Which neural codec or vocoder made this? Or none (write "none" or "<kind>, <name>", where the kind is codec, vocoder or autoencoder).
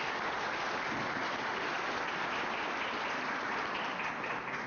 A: none